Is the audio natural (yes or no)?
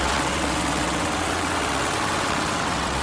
no